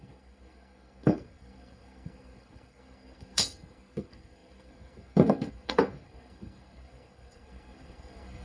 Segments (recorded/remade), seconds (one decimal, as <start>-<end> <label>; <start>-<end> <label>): 0.0-8.4 remade